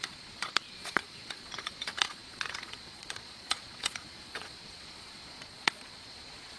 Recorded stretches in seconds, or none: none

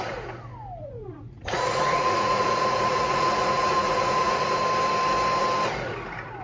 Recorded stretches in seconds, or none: 0.0-0.8; 4.6-6.4

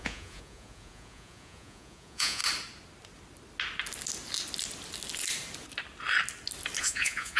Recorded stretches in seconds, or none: 2.4-6.8

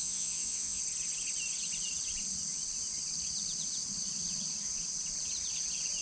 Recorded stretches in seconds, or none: 0.8-6.0

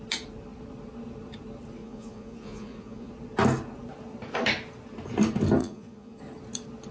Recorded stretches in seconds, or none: 0.0-1.8; 3.1-5.6; 6.2-6.9

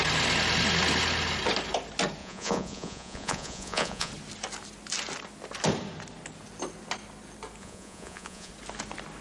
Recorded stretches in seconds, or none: 0.0-2.2; 4.1-7.6; 8.5-9.2

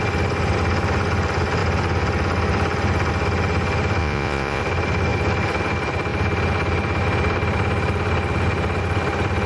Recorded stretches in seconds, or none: 0.0-4.0; 4.6-9.5

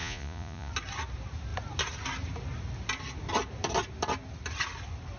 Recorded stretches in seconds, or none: 0.7-5.2